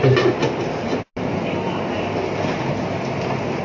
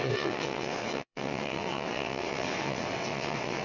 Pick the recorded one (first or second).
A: first